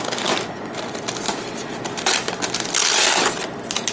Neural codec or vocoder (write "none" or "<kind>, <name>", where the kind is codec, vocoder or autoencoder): none